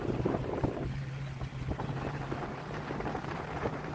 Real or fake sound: fake